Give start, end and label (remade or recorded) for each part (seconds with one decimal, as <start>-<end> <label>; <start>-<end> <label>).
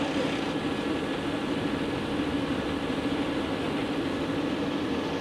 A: 0.0-2.5 recorded; 2.5-3.1 remade; 3.1-5.2 recorded